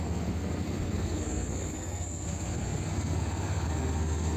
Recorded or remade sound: remade